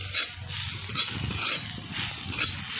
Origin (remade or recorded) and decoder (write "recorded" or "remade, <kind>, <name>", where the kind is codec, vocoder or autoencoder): recorded